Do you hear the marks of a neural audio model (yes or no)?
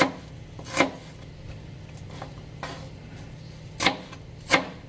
no